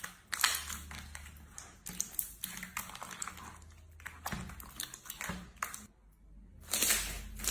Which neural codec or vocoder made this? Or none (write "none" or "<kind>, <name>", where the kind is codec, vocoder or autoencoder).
none